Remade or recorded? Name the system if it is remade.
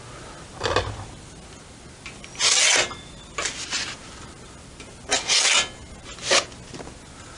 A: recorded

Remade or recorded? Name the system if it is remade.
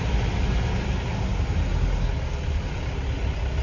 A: recorded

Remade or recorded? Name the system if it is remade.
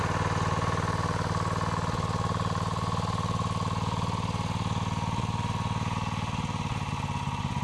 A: recorded